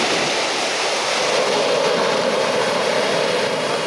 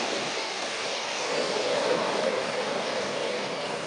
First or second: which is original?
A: first